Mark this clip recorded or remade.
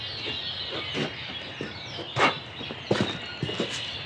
recorded